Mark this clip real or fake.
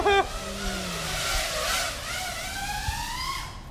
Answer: real